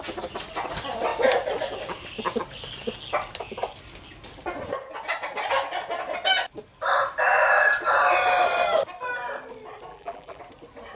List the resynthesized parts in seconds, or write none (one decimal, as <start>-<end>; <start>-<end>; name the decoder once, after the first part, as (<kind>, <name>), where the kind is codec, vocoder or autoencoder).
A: 9.9-10.4 (vocoder, BigVGAN v2)